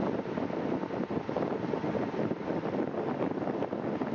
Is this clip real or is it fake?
real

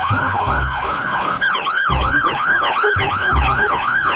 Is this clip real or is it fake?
fake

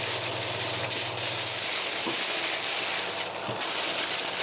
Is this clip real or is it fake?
real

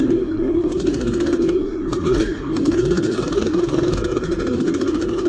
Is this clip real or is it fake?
fake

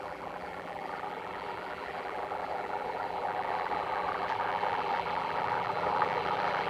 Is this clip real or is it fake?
fake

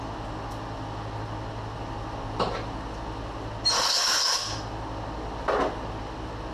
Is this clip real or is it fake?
real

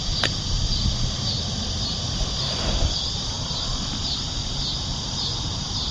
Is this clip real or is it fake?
real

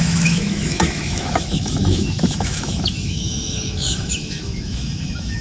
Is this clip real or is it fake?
fake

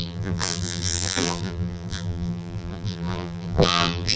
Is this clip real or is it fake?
fake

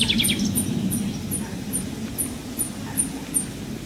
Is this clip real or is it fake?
real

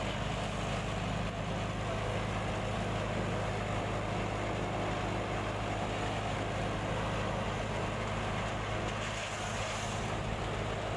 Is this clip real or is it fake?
real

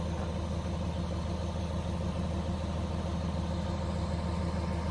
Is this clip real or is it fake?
real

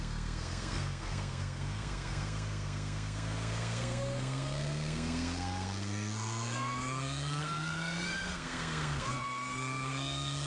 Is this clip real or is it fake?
fake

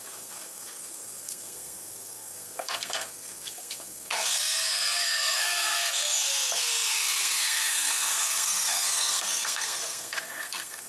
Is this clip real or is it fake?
fake